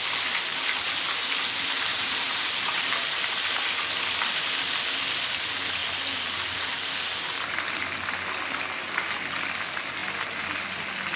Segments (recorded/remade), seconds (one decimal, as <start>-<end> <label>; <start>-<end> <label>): 0.0-0.5 recorded; 0.5-1.0 remade; 1.0-1.9 recorded; 1.9-3.2 remade; 3.2-11.2 recorded